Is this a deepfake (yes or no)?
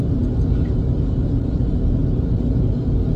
no